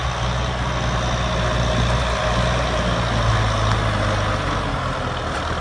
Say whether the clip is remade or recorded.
recorded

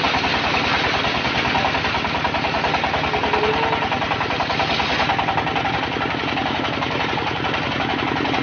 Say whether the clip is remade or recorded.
recorded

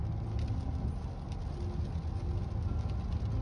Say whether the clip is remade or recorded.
recorded